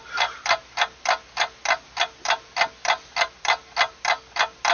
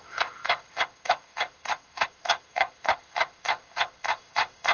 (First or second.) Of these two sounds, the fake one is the second